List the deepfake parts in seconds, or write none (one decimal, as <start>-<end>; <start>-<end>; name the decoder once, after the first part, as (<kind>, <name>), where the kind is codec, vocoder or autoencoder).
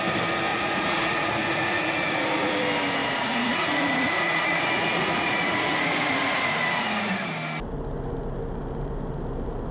0.5-2.5 (vocoder, Vocos); 3.0-7.2